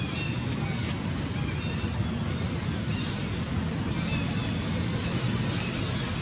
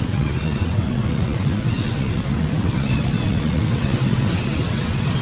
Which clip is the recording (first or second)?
first